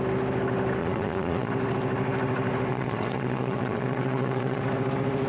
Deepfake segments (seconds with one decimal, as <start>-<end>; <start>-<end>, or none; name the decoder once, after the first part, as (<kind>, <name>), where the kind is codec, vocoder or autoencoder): 0.8-1.5 (vocoder, Vocos); 2.7-4.6